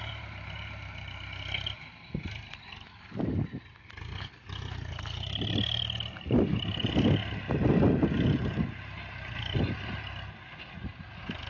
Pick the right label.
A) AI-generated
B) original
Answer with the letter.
B